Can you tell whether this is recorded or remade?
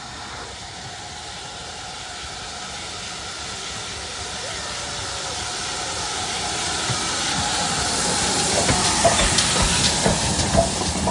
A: recorded